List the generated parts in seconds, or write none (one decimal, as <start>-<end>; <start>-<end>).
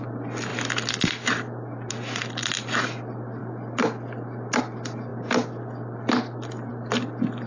none